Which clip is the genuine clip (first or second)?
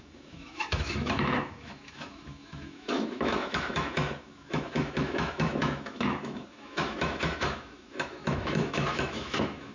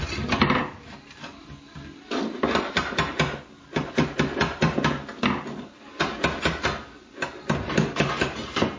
second